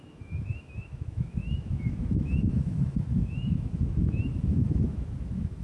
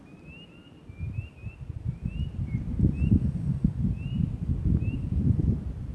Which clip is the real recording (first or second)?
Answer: second